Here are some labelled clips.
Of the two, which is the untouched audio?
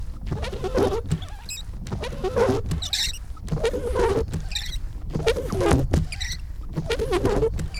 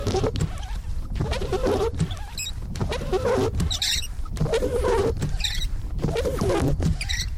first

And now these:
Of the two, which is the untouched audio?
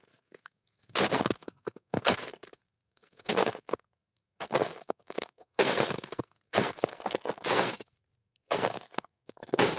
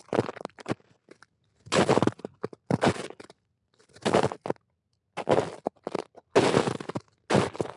second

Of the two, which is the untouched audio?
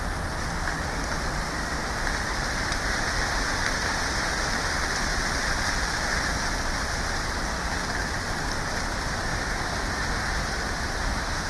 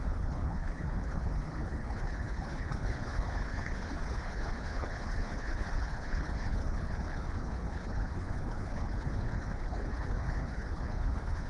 first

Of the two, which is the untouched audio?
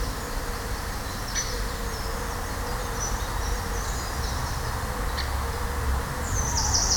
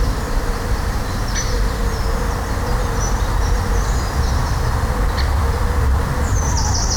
first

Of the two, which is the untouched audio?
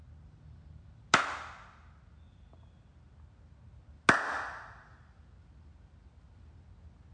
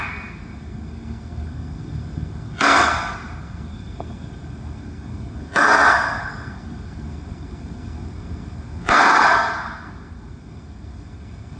first